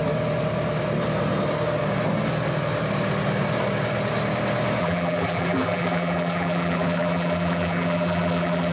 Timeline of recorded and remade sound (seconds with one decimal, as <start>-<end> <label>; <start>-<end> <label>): 0.0-4.8 recorded; 4.8-8.7 remade